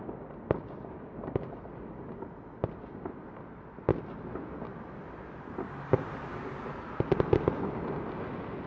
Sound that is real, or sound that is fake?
real